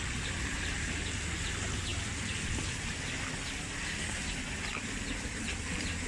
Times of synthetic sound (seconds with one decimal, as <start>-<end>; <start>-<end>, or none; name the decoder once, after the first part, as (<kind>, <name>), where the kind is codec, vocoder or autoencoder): none